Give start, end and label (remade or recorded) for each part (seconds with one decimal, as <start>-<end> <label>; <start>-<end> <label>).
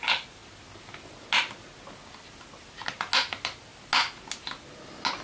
0.0-5.2 recorded